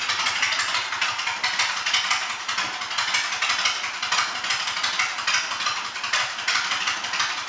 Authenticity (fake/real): real